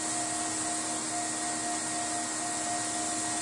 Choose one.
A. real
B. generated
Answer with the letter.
A